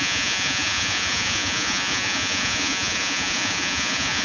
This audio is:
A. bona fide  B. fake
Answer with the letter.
B